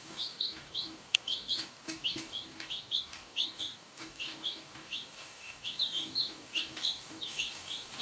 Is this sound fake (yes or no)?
yes